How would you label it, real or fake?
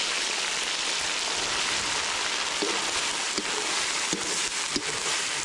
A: real